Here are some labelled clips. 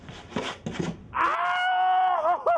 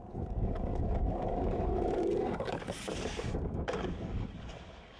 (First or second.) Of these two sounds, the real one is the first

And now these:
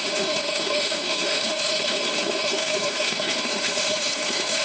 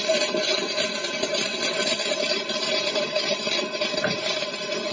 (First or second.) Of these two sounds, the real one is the second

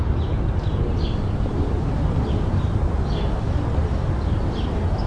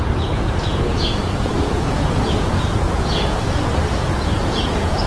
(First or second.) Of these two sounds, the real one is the first